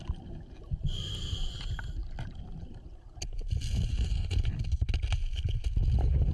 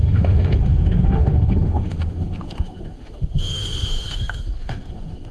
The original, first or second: first